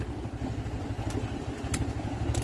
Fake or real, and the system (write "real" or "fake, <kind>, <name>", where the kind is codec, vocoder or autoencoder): real